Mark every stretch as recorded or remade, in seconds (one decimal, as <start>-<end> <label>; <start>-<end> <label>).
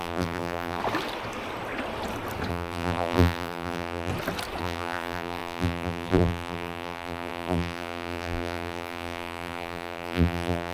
0.0-0.8 remade; 0.8-2.5 recorded; 2.5-4.1 remade; 4.1-4.6 recorded; 4.6-10.7 remade